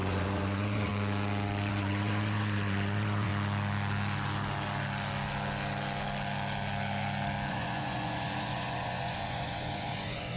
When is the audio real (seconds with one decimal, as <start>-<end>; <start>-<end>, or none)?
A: 0.9-1.7; 3.3-7.5